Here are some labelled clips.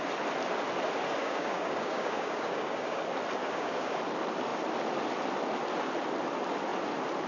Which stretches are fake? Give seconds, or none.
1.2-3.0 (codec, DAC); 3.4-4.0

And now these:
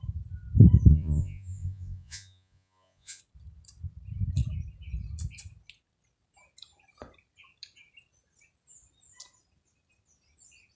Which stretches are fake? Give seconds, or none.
0.9-3.2 (vocoder, Vocos)

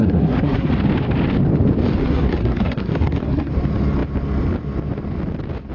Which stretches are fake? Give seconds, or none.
0.0-0.7 (codec, SNAC); 2.0-3.5

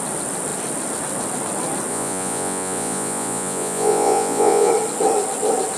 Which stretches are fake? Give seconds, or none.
1.9-4.7 (vocoder, Vocos)

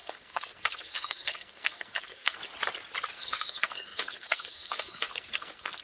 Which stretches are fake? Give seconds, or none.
0.0-2.4 (codec, SNAC); 3.1-5.8

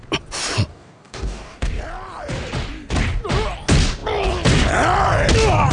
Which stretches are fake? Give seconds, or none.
0.7-1.8 (codec, DAC)

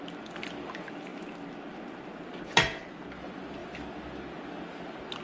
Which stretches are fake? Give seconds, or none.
none

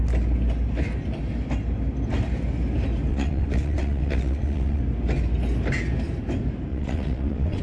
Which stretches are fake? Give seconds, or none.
3.1-4.8 (vocoder, WaveNeXt); 6.7-7.6